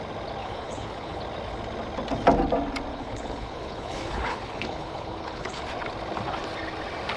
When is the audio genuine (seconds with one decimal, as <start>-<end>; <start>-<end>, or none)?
0.0-0.4; 1.2-2.9; 5.6-7.2